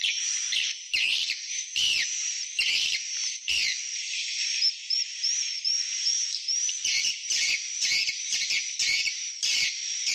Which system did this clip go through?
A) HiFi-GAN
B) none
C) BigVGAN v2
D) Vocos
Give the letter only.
C